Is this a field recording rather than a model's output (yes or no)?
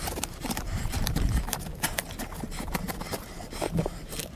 no